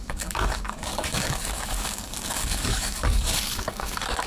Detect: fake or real fake